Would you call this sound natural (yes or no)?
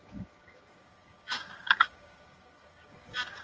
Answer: no